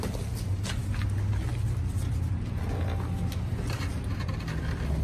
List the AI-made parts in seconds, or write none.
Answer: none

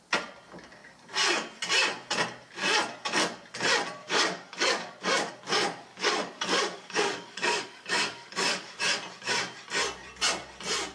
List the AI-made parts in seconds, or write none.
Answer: 4.0-5.3 (codec, DAC); 5.9-8.8

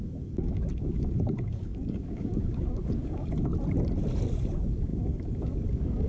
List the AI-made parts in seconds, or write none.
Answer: 0.0-3.5 (codec, DAC); 4.3-6.1